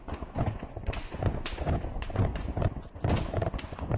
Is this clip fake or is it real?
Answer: fake